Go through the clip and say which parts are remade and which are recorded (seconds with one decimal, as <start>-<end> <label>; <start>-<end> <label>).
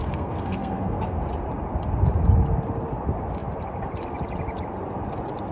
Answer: 0.0-1.2 remade; 1.2-5.5 recorded